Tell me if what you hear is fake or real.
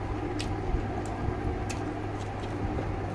real